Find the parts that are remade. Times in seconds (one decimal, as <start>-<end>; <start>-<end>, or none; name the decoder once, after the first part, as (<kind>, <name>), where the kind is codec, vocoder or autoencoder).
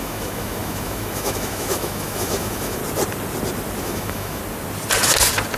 0.0-2.8 (autoencoder, DAC-VAE); 3.8-4.4